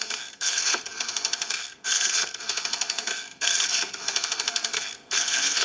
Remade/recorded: remade